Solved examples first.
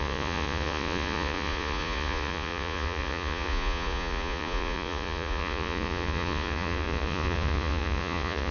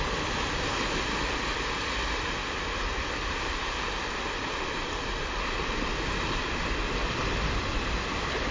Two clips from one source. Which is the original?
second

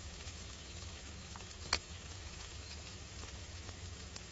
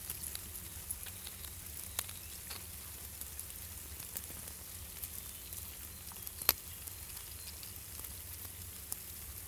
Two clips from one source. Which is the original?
second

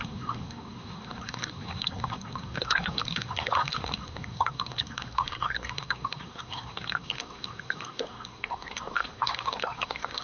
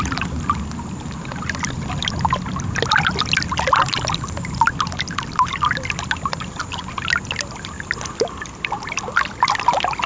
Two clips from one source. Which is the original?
second